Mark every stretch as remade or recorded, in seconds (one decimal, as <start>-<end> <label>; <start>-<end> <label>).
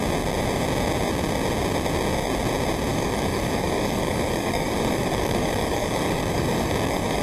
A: 0.0-2.9 recorded; 2.9-7.2 remade